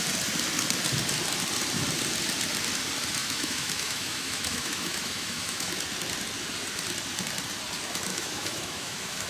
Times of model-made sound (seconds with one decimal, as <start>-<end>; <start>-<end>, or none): 3.2-5.7; 8.1-9.3